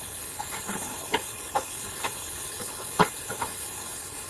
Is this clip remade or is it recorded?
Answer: remade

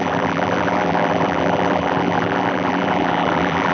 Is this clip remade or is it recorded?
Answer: remade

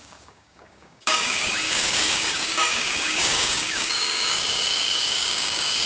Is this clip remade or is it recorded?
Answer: remade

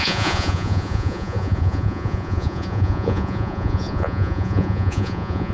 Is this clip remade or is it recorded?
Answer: remade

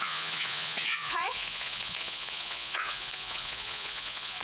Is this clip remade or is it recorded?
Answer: remade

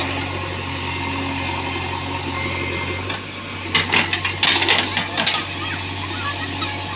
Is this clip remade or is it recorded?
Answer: recorded